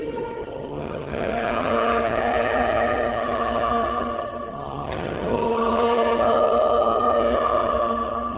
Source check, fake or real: fake